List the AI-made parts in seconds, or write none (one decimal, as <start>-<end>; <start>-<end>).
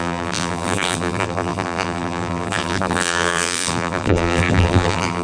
0.0-5.2